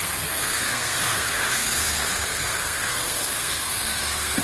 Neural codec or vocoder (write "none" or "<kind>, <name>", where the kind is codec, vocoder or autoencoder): codec, SNAC